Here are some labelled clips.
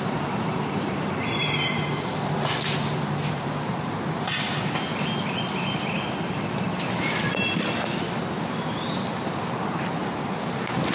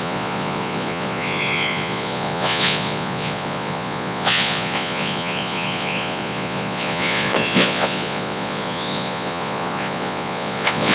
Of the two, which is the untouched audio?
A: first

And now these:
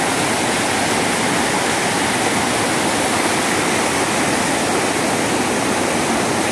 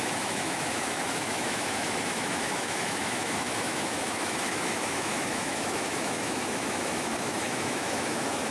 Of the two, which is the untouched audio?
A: first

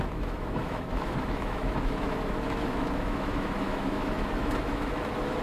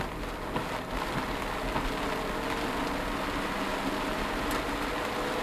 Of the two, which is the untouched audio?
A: second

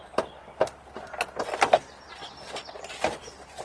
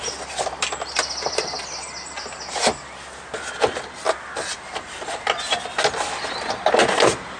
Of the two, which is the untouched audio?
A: second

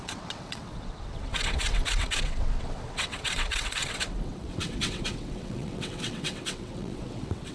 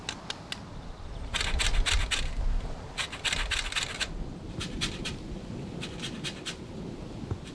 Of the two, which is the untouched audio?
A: second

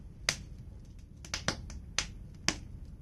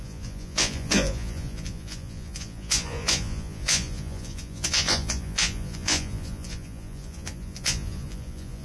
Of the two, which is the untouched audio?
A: first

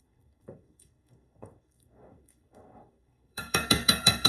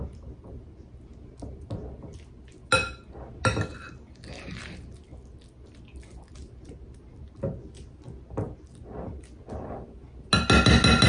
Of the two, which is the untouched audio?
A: second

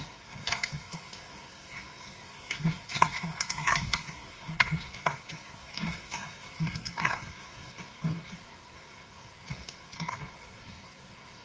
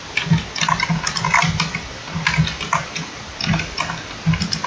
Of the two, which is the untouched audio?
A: second